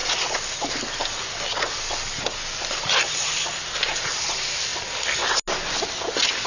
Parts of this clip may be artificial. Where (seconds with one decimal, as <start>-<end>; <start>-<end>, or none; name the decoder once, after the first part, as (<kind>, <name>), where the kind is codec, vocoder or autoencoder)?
none